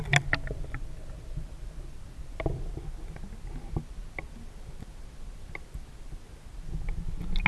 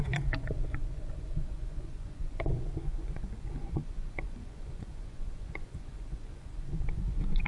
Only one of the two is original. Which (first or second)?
first